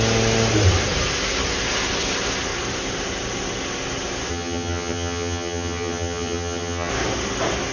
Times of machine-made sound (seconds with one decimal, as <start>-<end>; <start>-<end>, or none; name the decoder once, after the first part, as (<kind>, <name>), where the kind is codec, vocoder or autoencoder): 4.3-6.9 (vocoder, HiFi-GAN)